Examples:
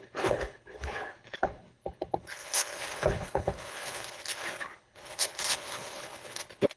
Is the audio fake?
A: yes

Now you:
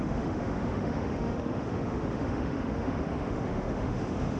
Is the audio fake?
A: yes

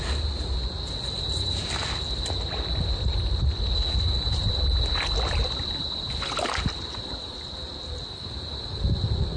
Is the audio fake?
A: no